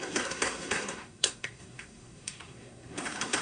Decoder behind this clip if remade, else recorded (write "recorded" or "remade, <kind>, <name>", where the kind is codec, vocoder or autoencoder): remade, codec, SNAC